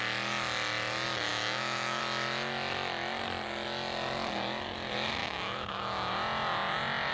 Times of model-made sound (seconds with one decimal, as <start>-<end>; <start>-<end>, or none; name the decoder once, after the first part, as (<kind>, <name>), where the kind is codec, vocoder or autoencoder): 1.3-2.0 (autoencoder, DAC-VAE); 5.2-6.1